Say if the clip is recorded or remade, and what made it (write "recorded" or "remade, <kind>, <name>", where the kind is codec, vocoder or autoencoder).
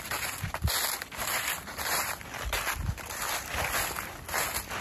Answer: recorded